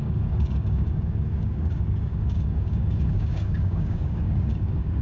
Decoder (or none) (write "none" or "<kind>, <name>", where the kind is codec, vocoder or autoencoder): codec, DAC